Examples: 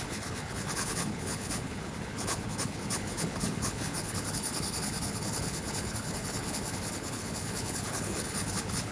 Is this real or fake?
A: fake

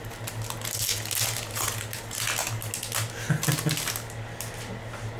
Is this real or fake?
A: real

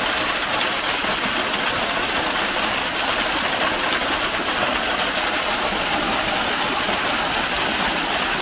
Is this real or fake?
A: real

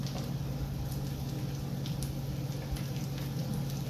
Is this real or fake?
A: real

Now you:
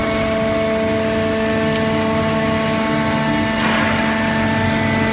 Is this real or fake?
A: real